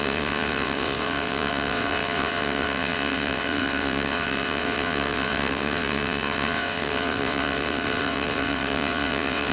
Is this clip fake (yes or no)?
yes